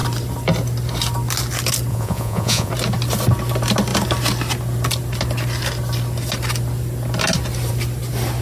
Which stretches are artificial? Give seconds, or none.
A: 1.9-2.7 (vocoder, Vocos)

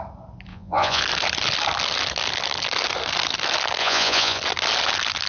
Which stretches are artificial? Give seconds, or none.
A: 0.5-1.0 (vocoder, Vocos); 3.8-4.4